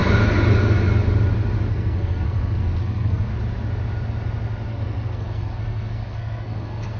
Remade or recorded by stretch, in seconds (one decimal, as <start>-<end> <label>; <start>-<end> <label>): 0.0-1.7 recorded; 1.7-3.3 remade; 3.3-4.7 recorded; 4.7-7.0 remade